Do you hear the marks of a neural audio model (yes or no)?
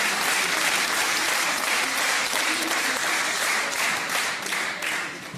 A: yes